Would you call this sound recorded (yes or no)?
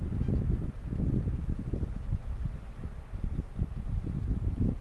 yes